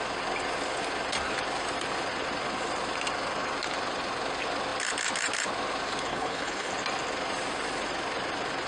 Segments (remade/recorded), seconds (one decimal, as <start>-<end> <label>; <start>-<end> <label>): 0.0-6.1 recorded; 6.1-6.7 remade; 6.7-8.7 recorded